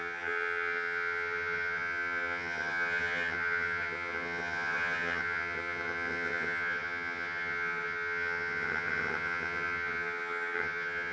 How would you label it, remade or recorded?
remade